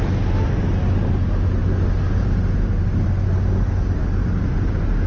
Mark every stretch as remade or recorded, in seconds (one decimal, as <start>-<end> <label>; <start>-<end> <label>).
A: 0.0-5.1 recorded